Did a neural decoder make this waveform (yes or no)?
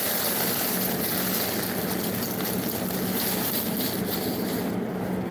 no